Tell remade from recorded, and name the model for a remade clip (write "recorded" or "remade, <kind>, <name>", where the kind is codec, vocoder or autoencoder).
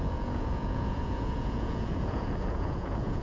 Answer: remade, vocoder, Vocos